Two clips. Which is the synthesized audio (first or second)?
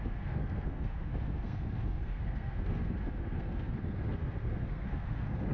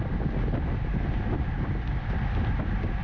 first